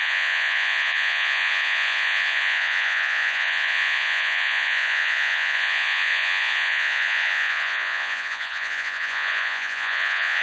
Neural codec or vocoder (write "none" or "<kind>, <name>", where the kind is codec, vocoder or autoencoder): vocoder, Vocos